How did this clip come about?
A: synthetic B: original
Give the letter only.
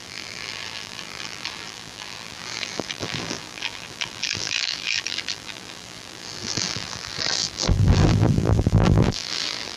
A